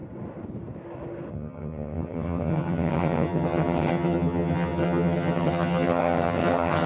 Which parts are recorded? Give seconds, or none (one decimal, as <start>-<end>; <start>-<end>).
0.0-1.3